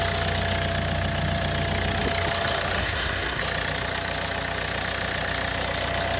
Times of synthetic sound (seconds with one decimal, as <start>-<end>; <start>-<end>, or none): 2.8-3.4